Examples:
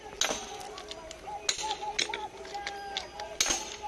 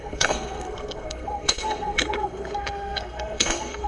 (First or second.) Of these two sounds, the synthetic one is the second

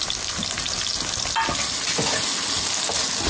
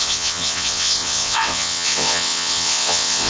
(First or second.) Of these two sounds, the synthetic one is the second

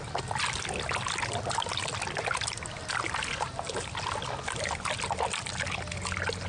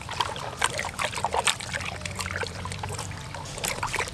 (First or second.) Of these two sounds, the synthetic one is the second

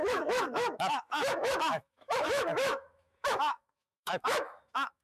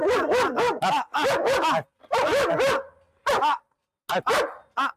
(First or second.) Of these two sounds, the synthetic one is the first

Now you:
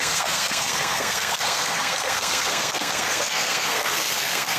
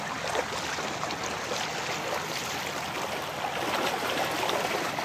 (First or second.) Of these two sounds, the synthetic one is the first